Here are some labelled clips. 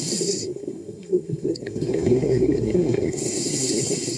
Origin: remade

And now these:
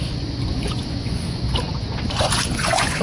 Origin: remade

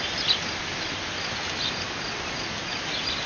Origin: recorded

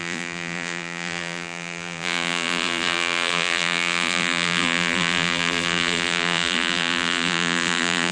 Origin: remade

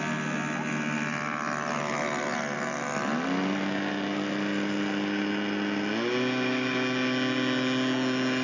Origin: recorded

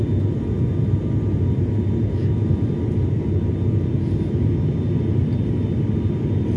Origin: recorded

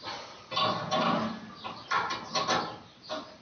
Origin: recorded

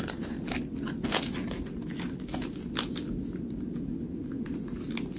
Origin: recorded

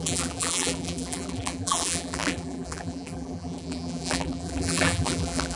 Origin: remade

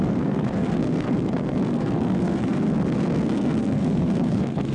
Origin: remade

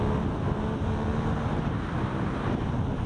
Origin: recorded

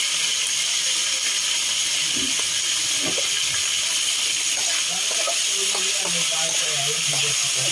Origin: recorded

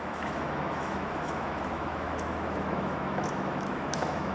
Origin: remade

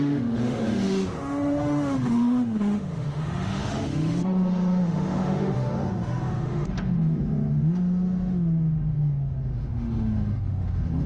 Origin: remade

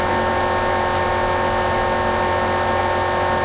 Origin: recorded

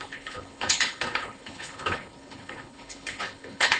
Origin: remade